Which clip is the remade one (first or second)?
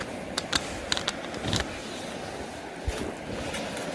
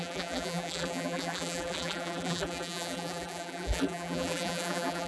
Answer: second